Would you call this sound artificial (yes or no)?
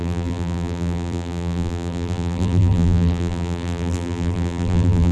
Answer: yes